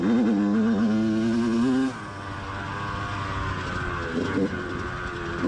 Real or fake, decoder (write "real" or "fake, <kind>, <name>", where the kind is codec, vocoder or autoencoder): real